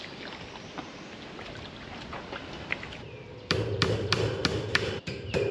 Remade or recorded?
recorded